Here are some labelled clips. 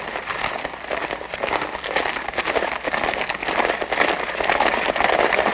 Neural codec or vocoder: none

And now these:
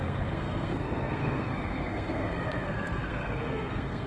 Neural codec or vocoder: codec, SNAC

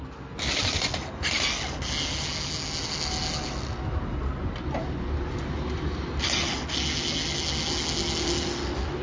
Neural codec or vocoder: none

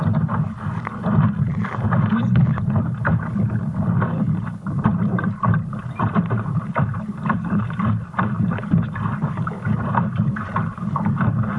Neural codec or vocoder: none